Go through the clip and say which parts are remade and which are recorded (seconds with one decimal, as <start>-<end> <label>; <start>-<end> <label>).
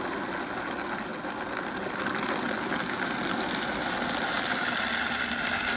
0.0-5.8 recorded